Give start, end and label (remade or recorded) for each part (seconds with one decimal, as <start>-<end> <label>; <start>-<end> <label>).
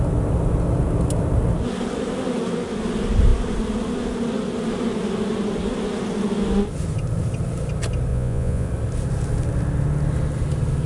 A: 0.0-8.1 recorded; 8.1-8.7 remade; 8.7-10.9 recorded